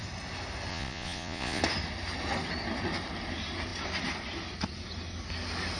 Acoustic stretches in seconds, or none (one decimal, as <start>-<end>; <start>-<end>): 0.0-0.7; 1.6-5.8